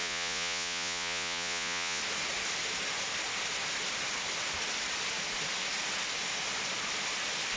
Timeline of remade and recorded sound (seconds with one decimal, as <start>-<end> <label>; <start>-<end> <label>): 0.0-2.0 remade; 2.0-7.6 recorded